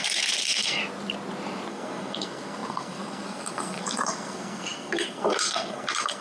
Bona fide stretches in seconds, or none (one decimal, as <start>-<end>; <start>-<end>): 0.8-1.7